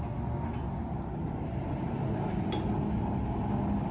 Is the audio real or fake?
real